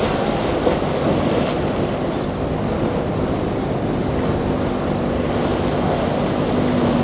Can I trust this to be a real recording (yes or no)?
yes